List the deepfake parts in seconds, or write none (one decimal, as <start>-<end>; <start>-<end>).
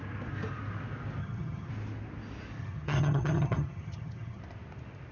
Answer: 1.2-1.7; 2.6-4.4